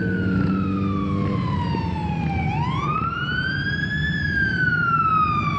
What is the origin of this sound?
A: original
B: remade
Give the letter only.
A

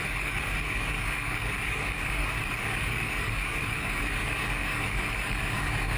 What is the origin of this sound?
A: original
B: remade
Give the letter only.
B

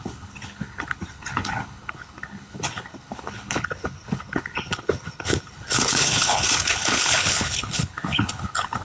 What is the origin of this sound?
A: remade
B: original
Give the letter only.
A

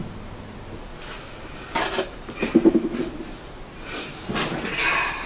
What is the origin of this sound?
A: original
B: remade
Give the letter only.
A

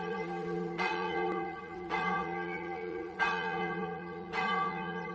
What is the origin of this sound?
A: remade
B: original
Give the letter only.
A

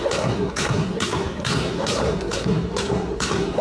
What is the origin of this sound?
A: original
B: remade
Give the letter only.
B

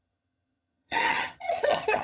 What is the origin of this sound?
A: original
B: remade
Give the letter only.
B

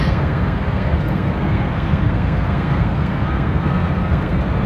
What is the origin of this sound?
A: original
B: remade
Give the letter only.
B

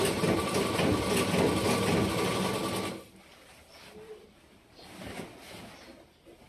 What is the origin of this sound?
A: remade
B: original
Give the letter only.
B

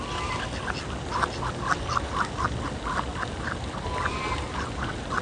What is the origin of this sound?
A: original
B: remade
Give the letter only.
A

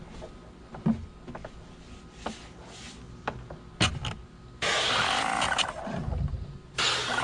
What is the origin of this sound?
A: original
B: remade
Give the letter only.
A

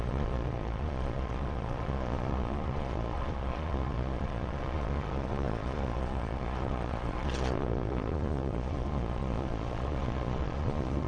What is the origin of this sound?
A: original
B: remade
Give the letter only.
B